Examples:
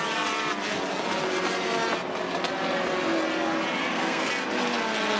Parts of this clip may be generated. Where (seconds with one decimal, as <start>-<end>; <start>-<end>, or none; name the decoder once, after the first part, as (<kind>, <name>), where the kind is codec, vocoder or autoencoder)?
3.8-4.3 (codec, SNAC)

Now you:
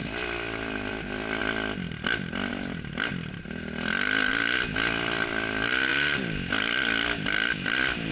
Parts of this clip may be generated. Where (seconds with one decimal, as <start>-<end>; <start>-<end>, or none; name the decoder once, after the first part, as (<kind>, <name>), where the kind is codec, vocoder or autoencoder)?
none

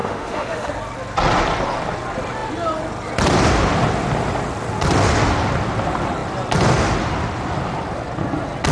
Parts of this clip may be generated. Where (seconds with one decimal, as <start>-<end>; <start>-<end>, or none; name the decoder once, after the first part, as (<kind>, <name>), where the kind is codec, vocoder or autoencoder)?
0.0-0.7 (autoencoder, DAC-VAE)

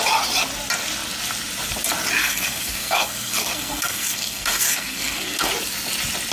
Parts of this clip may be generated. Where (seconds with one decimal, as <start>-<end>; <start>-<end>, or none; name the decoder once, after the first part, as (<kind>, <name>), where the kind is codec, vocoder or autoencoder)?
2.2-5.5 (codec, SNAC)

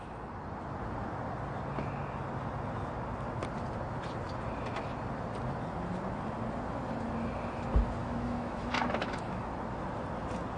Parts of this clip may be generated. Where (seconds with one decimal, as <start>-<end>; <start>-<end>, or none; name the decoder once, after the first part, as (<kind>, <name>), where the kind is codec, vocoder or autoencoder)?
8.0-9.4 (autoencoder, DAC-VAE)